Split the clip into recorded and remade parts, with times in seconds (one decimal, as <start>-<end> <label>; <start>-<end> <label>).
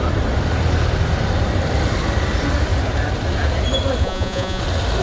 0.0-4.0 recorded; 4.0-4.6 remade; 4.6-5.0 recorded